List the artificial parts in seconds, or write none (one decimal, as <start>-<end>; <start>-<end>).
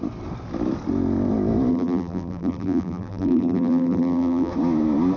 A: 1.7-4.5